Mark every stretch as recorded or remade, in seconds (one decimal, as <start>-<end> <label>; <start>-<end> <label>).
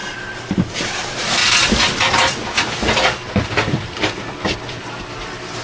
0.0-5.6 remade